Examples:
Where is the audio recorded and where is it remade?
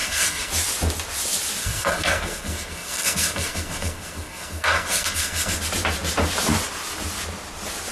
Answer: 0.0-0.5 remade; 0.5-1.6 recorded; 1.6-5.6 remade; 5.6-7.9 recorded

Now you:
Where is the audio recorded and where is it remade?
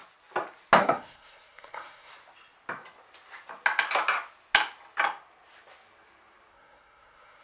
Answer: 0.0-0.8 recorded; 0.8-2.1 remade; 2.1-6.5 recorded; 6.5-7.4 remade